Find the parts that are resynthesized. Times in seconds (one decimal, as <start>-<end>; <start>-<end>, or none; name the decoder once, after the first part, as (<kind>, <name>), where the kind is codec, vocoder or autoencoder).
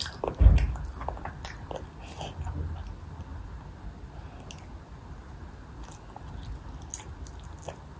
none